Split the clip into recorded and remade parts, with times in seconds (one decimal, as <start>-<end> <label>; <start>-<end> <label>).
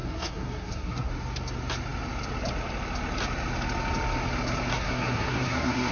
0.0-1.1 remade; 1.1-4.7 recorded; 4.7-5.9 remade